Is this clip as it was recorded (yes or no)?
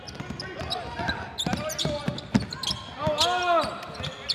yes